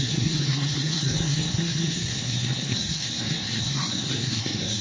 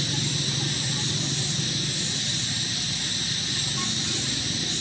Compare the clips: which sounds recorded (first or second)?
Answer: second